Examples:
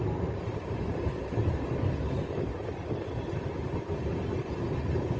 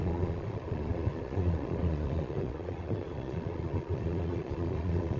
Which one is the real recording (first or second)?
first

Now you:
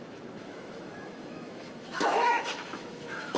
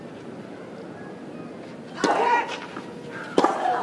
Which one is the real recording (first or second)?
second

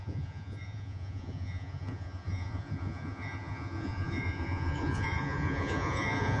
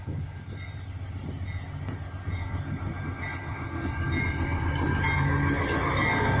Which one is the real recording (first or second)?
second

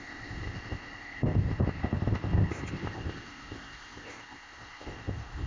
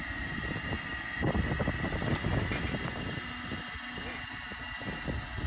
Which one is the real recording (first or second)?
second